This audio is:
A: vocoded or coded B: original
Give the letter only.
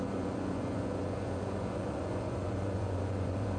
A